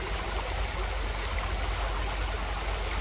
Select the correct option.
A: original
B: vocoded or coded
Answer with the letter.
A